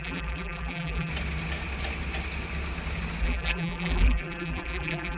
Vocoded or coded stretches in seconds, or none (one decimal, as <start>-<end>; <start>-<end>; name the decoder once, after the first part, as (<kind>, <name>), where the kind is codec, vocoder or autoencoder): 0.0-1.1 (vocoder, BigVGAN v2); 3.2-5.2